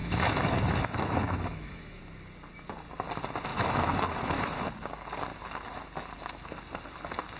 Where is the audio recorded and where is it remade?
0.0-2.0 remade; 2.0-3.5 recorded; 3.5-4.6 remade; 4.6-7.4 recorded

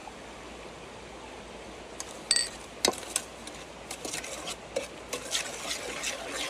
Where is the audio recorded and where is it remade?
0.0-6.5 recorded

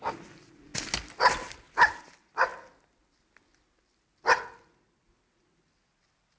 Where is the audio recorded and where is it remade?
0.0-6.4 recorded

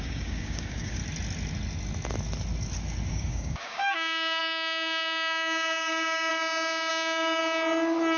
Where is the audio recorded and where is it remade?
0.0-1.0 remade; 1.0-3.1 recorded; 3.1-6.3 remade; 6.3-6.9 recorded; 6.9-7.4 remade; 7.4-8.2 recorded

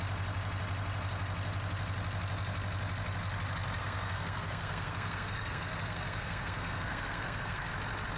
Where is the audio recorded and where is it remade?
0.0-3.8 recorded; 3.8-7.7 remade; 7.7-8.2 recorded

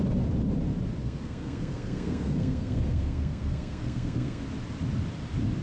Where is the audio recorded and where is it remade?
0.0-1.0 recorded; 1.0-4.4 remade; 4.4-5.6 recorded